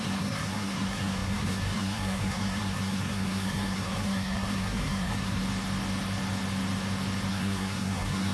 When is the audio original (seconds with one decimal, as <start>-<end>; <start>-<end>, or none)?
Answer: 5.4-7.3